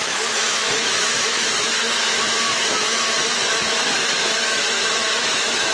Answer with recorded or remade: remade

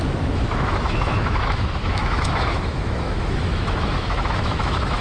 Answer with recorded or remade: remade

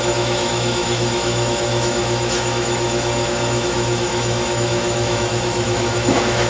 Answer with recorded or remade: remade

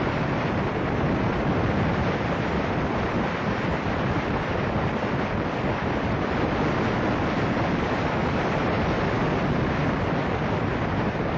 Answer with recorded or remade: recorded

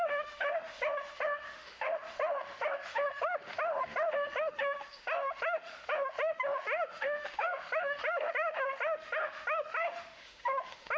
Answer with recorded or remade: remade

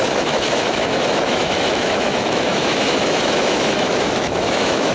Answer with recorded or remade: remade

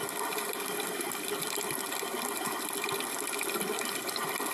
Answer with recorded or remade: recorded